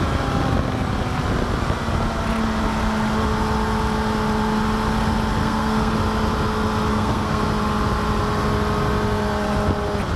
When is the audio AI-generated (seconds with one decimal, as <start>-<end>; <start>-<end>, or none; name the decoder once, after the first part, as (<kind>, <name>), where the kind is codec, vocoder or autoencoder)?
5.4-5.9 (codec, SNAC); 6.9-7.4